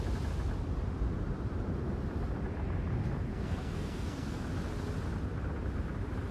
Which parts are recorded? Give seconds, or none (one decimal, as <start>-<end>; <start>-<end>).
0.0-3.3; 4.5-6.3

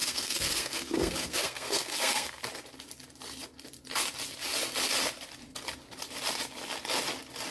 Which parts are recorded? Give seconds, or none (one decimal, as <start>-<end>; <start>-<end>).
2.4-7.5

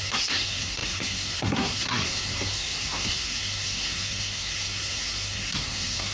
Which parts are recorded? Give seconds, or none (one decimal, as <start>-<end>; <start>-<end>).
none

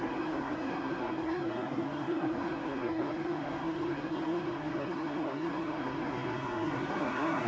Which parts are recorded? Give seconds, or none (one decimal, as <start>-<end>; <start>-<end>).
none

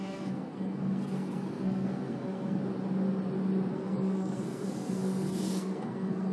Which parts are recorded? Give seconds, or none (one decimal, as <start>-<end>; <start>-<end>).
2.6-3.7